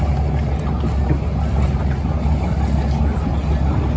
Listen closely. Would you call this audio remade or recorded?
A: recorded